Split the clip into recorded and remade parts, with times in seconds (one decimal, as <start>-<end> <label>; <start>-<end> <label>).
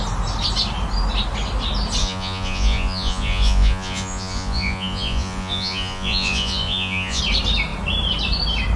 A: 0.0-2.0 recorded; 2.0-7.2 remade; 7.2-8.8 recorded